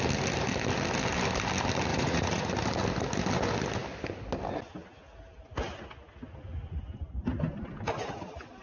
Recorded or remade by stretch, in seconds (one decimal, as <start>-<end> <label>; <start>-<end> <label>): 0.0-1.9 recorded; 1.9-2.5 remade; 2.5-8.6 recorded